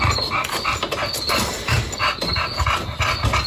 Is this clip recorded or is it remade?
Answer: recorded